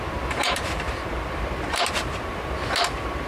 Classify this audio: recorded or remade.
remade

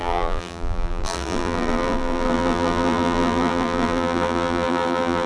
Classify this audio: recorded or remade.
remade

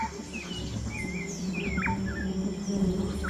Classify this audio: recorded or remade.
recorded